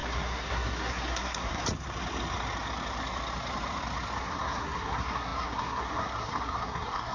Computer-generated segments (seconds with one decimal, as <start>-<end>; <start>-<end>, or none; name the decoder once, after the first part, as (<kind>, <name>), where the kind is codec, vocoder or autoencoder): 0.0-1.6 (codec, SNAC); 4.2-7.1